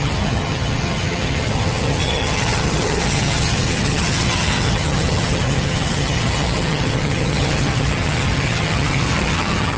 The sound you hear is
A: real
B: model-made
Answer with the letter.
B